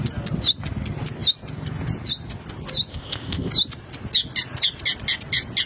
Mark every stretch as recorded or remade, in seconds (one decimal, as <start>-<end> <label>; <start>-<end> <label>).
0.0-2.9 recorded; 2.9-3.5 remade; 3.5-5.7 recorded